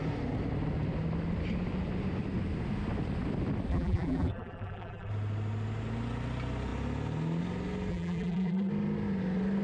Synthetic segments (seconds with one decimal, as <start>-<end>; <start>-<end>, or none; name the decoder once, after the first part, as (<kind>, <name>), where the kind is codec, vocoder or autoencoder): 3.7-5.1 (vocoder, BigVGAN v2); 7.9-8.7